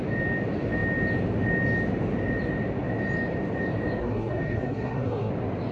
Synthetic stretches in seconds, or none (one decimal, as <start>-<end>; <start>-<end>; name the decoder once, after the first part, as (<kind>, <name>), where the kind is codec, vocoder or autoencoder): 4.0-5.3 (codec, SNAC)